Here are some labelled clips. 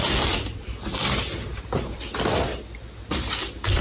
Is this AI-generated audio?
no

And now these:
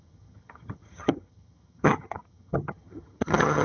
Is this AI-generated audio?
yes